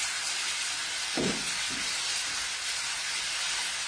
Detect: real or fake real